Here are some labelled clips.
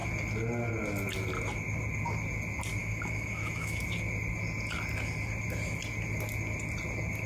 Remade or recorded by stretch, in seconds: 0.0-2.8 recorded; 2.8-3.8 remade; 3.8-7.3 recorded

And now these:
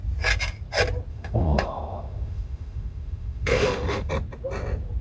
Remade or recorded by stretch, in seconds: 0.0-1.1 recorded; 1.1-4.1 remade; 4.1-5.0 recorded